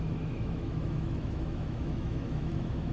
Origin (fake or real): fake